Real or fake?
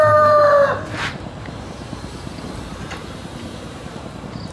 fake